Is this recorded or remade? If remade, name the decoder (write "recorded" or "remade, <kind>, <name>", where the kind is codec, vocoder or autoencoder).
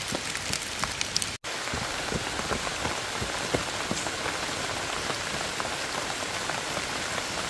recorded